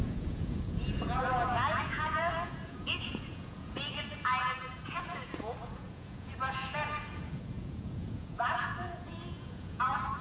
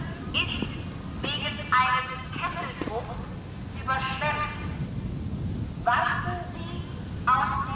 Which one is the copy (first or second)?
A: first